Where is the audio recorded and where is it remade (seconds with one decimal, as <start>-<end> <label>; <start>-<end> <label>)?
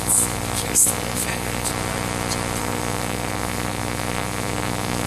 0.0-1.7 remade; 1.7-2.6 recorded; 2.6-5.1 remade